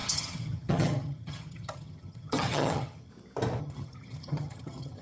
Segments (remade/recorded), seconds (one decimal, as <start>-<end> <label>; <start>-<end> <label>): 0.0-3.1 remade; 3.1-3.6 recorded; 3.6-5.0 remade